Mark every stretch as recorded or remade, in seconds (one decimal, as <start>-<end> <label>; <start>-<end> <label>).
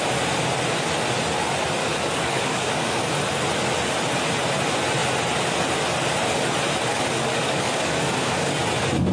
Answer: 0.0-1.8 recorded; 1.8-3.1 remade; 3.1-6.9 recorded; 6.9-8.6 remade; 8.6-9.1 recorded